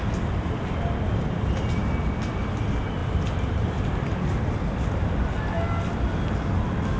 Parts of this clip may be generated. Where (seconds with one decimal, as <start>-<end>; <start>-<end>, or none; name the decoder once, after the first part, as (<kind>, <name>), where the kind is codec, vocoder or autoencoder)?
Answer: none